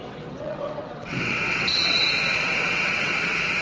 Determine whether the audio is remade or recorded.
remade